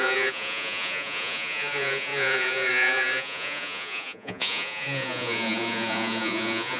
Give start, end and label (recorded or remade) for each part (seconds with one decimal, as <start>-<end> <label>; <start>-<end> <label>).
0.0-6.8 remade